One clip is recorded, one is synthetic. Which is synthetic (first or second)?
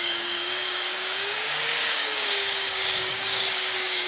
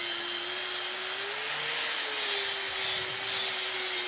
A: first